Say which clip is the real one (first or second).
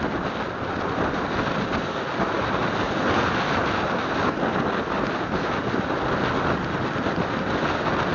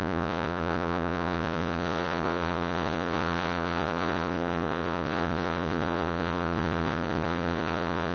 first